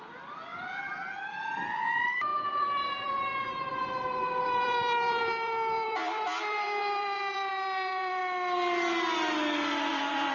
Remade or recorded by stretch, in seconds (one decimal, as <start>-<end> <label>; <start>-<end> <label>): 0.0-0.5 remade; 0.5-1.3 recorded; 1.3-8.2 remade; 8.2-9.9 recorded; 9.9-10.3 remade